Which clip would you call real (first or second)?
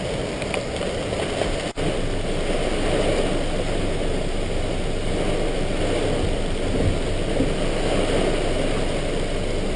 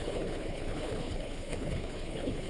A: first